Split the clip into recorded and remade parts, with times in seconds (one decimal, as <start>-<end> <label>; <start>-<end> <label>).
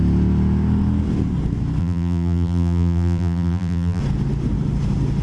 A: 0.0-1.8 recorded; 1.8-4.0 remade; 4.0-5.2 recorded